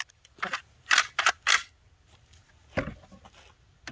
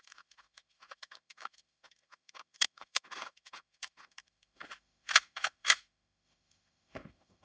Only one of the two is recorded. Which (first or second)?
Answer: first